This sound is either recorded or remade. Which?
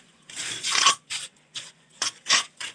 remade